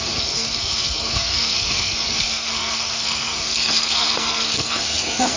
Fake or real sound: fake